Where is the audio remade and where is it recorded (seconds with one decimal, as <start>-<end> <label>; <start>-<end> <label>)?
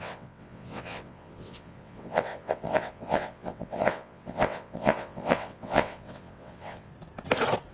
0.0-6.9 remade; 6.9-7.7 recorded